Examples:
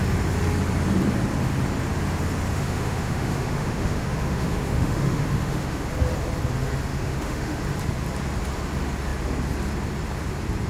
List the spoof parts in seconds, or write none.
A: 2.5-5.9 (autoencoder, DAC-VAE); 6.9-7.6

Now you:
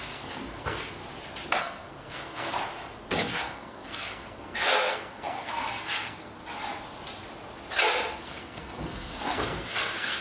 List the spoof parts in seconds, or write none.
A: 0.0-1.0 (codec, SNAC); 1.6-2.6; 3.1-6.4; 8.2-10.2

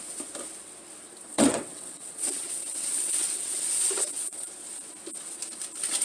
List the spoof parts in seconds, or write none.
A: 1.3-4.4 (vocoder, WaveNeXt)

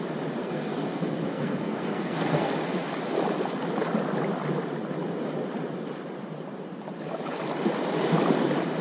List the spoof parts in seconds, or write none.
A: 0.4-2.5 (codec, SNAC)

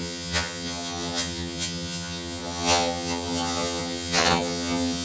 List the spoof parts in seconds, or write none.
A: 0.0-5.0 (vocoder, HiFi-GAN)

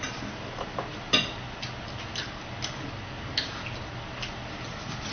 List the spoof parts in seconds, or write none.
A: none

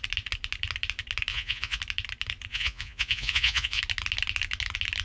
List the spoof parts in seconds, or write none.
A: 1.3-1.8 (vocoder, Vocos); 2.5-3.8

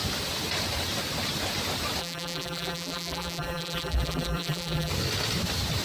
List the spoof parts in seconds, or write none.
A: 2.0-4.9 (vocoder, BigVGAN v2)